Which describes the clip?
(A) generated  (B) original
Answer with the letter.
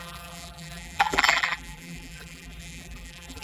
A